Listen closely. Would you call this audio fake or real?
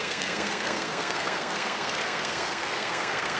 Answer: fake